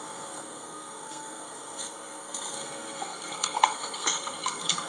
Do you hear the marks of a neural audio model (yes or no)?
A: yes